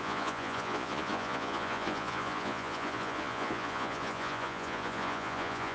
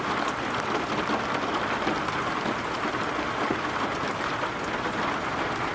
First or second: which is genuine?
second